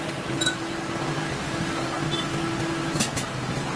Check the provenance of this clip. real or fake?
real